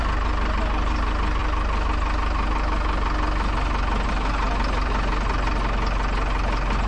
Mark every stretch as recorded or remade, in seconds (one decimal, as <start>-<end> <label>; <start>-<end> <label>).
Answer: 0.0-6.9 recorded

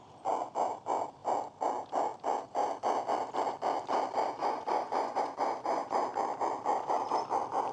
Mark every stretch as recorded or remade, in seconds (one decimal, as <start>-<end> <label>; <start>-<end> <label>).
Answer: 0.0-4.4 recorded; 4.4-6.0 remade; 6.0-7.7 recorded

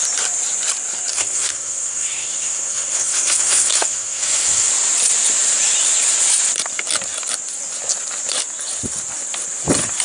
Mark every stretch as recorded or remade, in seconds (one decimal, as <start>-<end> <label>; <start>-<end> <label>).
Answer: 0.0-1.1 recorded; 1.1-4.7 remade; 4.7-10.0 recorded

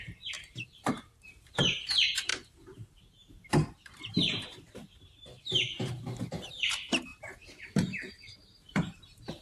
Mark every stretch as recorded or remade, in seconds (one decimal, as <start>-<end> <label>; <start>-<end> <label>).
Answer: 0.0-2.3 remade; 2.3-3.1 recorded; 3.1-7.1 remade; 7.1-8.1 recorded; 8.1-9.4 remade

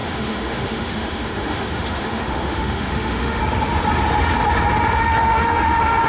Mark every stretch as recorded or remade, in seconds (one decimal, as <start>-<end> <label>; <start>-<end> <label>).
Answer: 0.0-3.4 remade; 3.4-5.0 recorded; 5.0-6.1 remade